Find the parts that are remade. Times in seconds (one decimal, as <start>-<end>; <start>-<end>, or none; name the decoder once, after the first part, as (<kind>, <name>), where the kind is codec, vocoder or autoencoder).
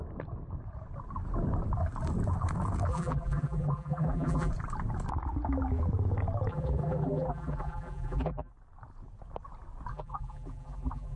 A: 2.9-4.5 (vocoder, BigVGAN v2); 6.5-8.5; 9.9-11.2